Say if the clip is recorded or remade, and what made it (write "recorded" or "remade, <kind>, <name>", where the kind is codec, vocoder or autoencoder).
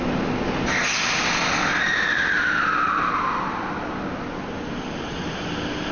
recorded